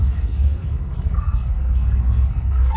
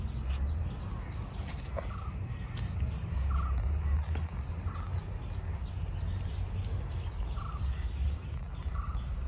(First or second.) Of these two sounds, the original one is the second